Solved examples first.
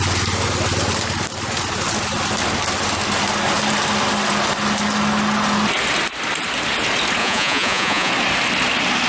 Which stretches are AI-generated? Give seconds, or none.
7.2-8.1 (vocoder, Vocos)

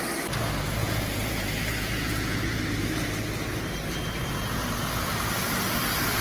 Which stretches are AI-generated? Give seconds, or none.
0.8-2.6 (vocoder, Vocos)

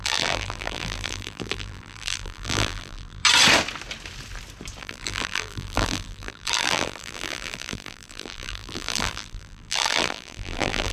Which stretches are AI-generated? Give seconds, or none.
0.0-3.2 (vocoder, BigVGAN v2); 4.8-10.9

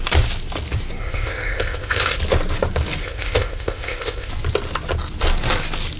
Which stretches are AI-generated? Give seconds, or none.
1.0-2.2 (codec, ZipCodec); 3.0-4.3